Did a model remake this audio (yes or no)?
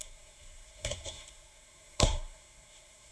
yes